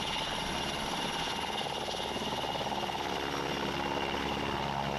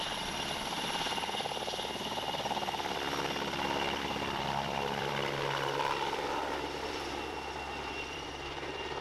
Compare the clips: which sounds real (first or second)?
first